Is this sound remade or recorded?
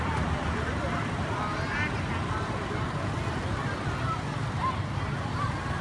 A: recorded